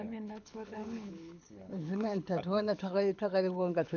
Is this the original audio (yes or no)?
no